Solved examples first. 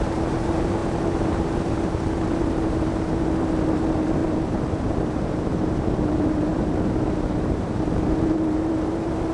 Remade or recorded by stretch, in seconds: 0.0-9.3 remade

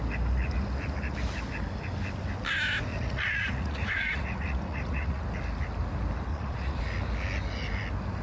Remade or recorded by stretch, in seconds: 0.0-2.9 recorded; 2.9-5.2 remade; 5.2-6.3 recorded; 6.3-6.8 remade; 6.8-8.2 recorded

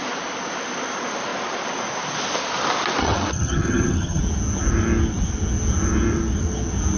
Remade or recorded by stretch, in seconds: 0.0-3.0 recorded; 3.0-4.2 remade; 4.2-7.0 recorded

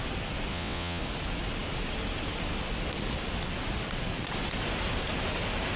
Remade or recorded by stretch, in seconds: 0.0-0.5 recorded; 0.5-1.0 remade; 1.0-5.8 recorded

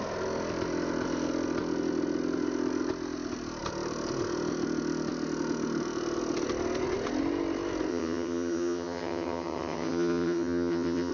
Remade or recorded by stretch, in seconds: 0.0-7.9 recorded; 7.9-11.1 remade